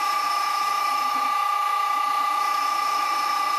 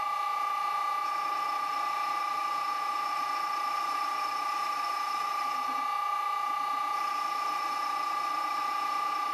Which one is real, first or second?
second